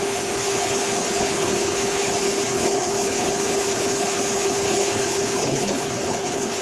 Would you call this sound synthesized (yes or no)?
yes